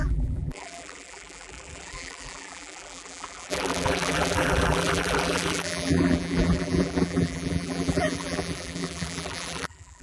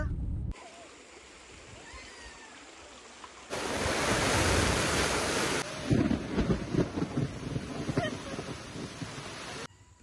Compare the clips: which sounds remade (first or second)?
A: first